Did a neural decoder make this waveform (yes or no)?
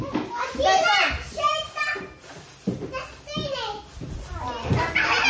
no